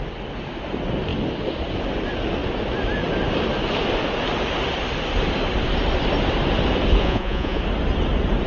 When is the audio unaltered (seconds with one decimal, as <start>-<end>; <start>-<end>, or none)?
0.0-7.0; 7.6-8.5